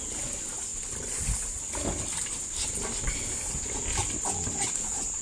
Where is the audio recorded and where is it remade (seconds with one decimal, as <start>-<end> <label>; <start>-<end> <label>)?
0.0-5.2 recorded